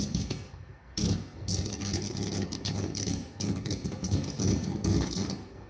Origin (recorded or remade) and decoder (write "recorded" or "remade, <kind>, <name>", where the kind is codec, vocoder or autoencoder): remade, codec, SNAC